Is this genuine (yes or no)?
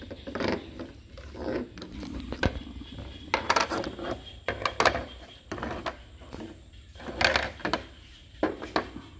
yes